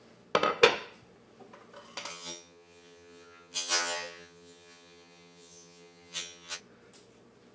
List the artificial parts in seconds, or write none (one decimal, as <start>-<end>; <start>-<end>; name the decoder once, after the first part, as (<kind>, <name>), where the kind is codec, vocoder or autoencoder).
2.1-6.6 (vocoder, HiFi-GAN)